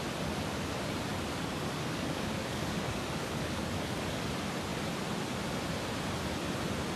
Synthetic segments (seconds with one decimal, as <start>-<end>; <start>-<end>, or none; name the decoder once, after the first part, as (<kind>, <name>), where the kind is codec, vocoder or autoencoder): 1.1-4.3 (codec, DAC)